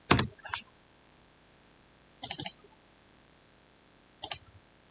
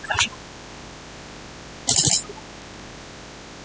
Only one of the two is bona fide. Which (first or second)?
second